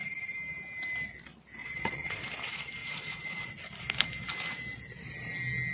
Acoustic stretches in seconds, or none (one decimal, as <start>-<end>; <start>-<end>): 0.0-1.6; 2.2-2.8; 3.5-5.7